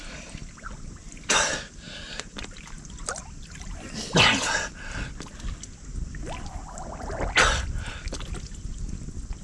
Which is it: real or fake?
real